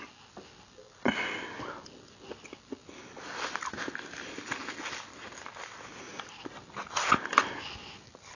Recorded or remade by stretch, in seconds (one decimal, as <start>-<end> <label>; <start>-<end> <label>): 0.0-8.3 recorded